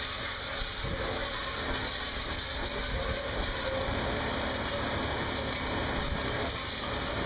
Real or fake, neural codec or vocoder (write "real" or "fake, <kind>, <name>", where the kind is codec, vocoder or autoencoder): real